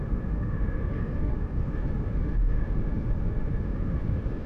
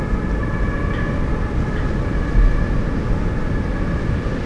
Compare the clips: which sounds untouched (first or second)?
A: second